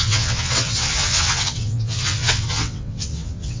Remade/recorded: remade